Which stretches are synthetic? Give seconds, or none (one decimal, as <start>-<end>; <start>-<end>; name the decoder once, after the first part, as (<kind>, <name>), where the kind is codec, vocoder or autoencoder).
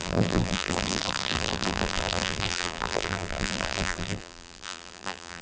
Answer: 0.0-5.4 (vocoder, BigVGAN v2)